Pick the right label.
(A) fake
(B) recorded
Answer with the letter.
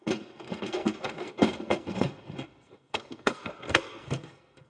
A